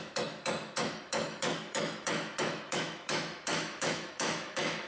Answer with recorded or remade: remade